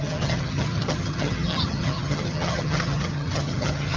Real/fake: fake